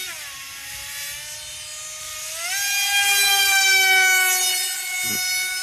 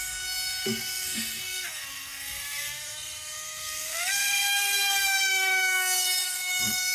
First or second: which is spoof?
second